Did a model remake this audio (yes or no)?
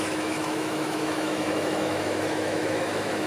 yes